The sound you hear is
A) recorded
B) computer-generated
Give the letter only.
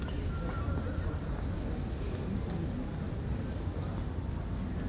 A